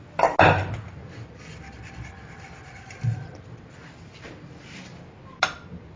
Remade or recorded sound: recorded